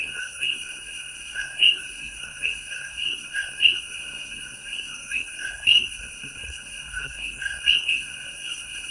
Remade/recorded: remade